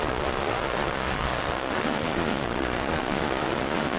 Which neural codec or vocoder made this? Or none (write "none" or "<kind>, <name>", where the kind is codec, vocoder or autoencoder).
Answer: vocoder, Vocos